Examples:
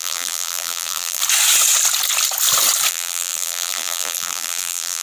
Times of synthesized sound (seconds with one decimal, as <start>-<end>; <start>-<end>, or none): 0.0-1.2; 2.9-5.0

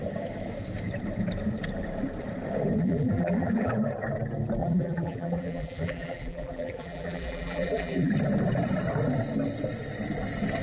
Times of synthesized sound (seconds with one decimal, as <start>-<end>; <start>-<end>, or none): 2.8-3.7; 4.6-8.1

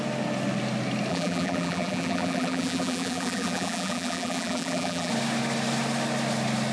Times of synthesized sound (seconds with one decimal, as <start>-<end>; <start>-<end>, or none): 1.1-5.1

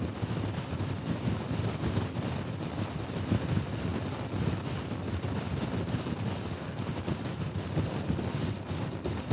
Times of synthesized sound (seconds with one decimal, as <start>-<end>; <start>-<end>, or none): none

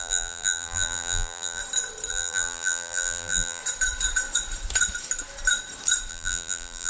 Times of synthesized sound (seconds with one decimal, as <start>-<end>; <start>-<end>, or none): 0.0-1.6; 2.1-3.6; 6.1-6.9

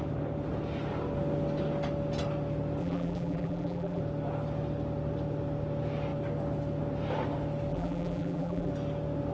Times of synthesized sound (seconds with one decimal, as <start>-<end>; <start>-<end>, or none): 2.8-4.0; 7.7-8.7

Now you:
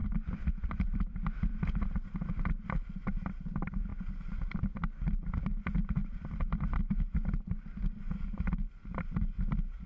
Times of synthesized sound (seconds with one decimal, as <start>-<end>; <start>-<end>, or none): 0.0-2.3; 6.0-6.8

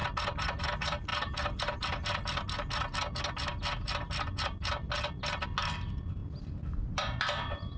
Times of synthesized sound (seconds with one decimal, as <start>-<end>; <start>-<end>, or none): 6.2-7.8